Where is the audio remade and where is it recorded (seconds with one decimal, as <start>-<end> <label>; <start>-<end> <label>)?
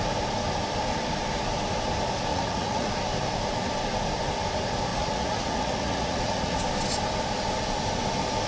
0.0-2.3 recorded; 2.3-3.0 remade; 3.0-4.9 recorded; 4.9-6.6 remade; 6.6-8.5 recorded